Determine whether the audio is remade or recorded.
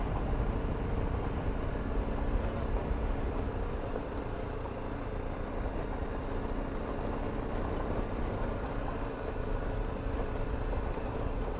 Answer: recorded